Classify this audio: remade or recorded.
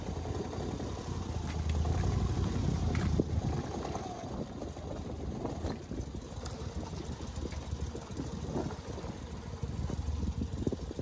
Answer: recorded